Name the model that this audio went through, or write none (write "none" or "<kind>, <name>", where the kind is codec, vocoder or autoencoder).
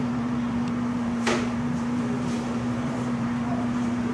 vocoder, BigVGAN v2